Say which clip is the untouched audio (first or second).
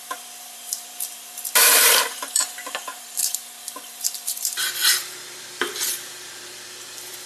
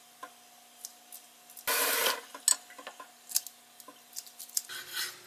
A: second